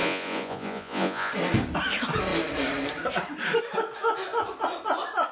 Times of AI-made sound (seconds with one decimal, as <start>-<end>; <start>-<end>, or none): 0.0-1.3